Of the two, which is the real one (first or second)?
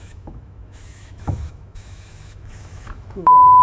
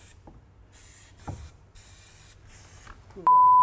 second